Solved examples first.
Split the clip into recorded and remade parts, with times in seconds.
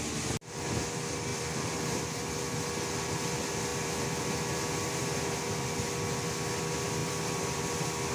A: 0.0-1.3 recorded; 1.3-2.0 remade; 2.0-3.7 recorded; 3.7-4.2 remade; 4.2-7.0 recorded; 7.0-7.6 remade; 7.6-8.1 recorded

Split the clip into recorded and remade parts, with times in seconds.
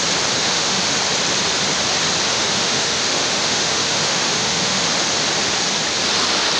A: 0.0-0.4 recorded; 0.4-1.0 remade; 1.0-2.3 recorded; 2.3-4.9 remade; 4.9-6.6 recorded